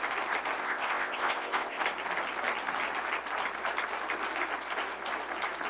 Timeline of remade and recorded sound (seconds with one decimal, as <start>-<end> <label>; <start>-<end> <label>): 0.0-0.6 recorded; 0.6-1.8 remade; 1.8-5.7 recorded